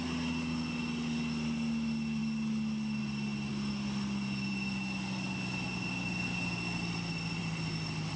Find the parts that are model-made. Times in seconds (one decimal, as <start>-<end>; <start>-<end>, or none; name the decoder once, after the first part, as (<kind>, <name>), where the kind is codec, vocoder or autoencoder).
none